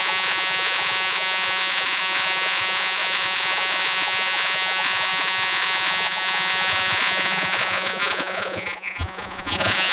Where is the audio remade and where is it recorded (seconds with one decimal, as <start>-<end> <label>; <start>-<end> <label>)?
0.0-9.9 remade